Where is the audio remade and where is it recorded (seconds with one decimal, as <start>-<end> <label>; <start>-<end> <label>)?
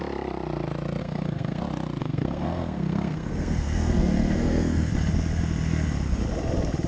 0.0-1.0 recorded; 1.0-1.6 remade; 1.6-2.0 recorded; 2.0-4.9 remade; 4.9-6.9 recorded